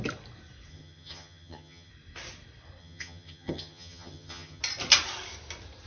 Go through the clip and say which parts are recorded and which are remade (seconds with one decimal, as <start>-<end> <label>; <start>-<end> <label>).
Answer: 0.0-0.7 recorded; 0.7-1.9 remade; 1.9-2.8 recorded; 2.8-4.6 remade; 4.6-5.9 recorded